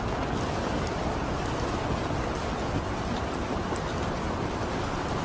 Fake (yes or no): no